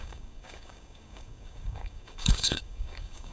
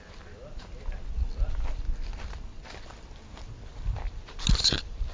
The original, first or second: second